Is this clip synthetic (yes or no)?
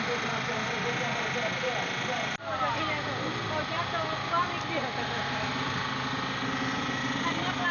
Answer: no